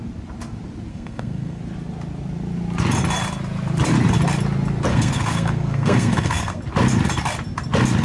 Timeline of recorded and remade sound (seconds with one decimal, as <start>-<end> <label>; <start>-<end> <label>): 0.0-0.9 recorded; 0.9-1.6 remade; 1.6-4.9 recorded; 4.9-6.6 remade; 6.6-8.0 recorded